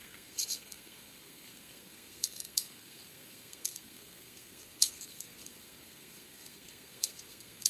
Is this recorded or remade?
remade